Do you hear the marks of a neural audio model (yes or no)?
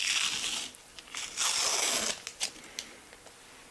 no